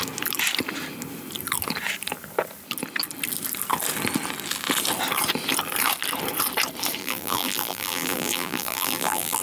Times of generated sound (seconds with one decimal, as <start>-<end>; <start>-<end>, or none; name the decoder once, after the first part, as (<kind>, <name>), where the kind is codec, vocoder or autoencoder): 7.0-9.4 (vocoder, BigVGAN v2)